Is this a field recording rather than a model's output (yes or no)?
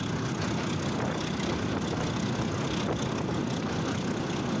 yes